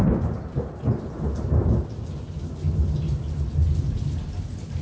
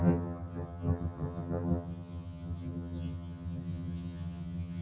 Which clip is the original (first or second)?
first